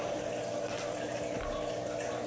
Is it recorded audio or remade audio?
recorded